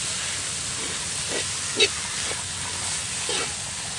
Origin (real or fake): real